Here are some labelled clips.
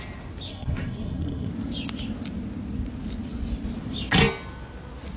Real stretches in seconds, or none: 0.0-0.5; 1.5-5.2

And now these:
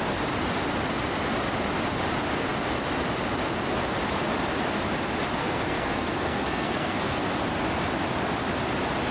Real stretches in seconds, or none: 0.0-5.4; 7.2-9.1